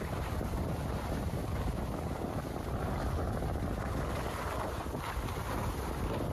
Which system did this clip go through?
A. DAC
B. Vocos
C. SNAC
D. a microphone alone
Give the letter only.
D